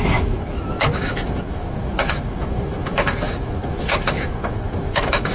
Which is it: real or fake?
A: fake